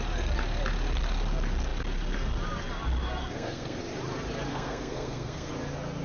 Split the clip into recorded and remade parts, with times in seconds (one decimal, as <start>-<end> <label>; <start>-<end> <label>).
0.0-3.2 recorded; 3.2-3.8 remade; 3.8-4.5 recorded; 4.5-5.5 remade; 5.5-6.0 recorded